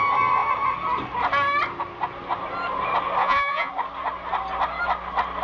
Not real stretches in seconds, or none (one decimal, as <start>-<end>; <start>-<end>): 3.2-3.7